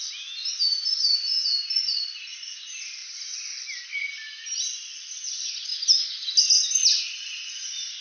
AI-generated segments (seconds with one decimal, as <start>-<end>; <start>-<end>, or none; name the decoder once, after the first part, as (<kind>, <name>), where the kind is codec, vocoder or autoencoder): none